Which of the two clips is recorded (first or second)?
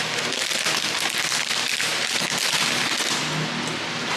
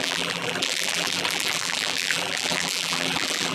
first